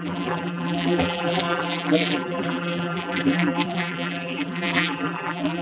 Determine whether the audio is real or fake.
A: fake